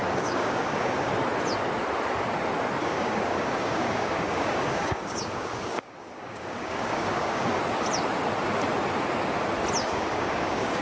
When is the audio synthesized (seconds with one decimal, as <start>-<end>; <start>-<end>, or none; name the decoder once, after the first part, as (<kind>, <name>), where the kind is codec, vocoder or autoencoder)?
0.0-1.1 (codec, DAC); 2.8-7.6; 9.8-10.8